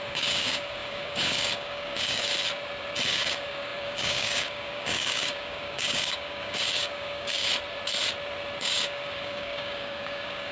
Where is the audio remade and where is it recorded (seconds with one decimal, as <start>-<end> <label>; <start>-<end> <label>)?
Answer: 0.0-2.3 remade; 2.3-3.1 recorded; 3.1-7.5 remade; 7.5-8.6 recorded; 8.6-10.5 remade